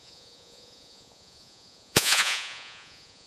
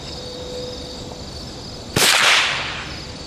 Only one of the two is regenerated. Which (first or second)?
first